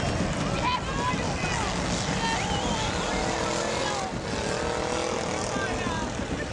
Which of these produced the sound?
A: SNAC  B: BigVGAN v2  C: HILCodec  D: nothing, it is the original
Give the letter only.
D